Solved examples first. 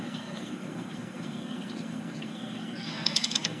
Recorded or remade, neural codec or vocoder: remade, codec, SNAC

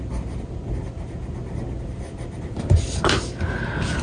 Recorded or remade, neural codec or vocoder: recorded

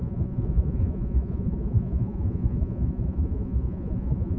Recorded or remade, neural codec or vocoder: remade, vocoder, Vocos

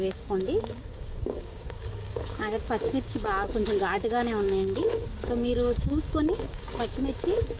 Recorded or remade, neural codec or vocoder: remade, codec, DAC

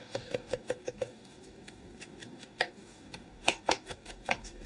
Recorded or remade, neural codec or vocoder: remade, codec, DAC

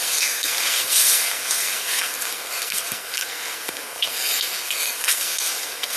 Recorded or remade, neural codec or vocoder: remade, codec, SNAC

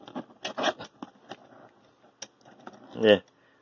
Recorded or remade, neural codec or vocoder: recorded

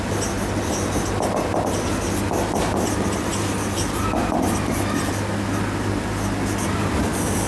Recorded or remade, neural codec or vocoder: recorded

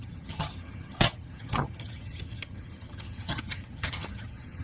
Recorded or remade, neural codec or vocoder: remade, vocoder, HiFi-GAN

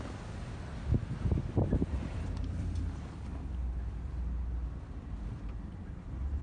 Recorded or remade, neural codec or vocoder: remade, vocoder, BigVGAN v2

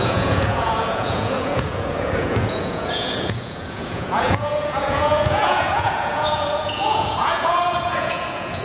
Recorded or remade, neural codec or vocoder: remade, vocoder, Vocos